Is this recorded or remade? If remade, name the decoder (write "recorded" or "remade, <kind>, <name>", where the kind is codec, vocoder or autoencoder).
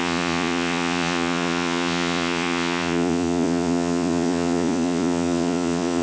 remade, vocoder, Vocos